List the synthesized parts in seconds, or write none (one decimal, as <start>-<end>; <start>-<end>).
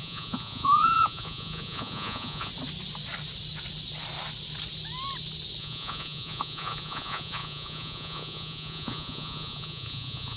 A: 0.0-2.5; 5.6-10.4